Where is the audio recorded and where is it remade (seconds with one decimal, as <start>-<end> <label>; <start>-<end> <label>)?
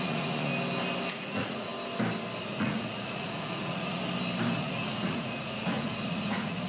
0.0-0.5 remade; 0.5-1.1 recorded; 1.1-1.7 remade; 1.7-2.4 recorded; 2.4-4.0 remade; 4.0-4.6 recorded; 4.6-6.7 remade